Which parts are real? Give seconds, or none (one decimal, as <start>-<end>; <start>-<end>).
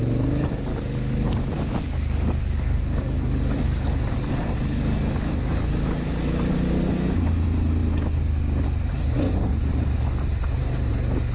0.0-0.7; 5.7-11.3